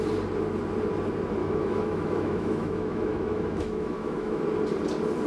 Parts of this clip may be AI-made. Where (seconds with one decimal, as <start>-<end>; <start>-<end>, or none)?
1.4-4.4